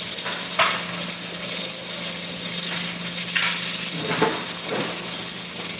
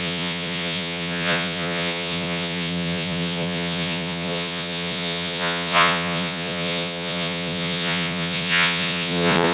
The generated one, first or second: second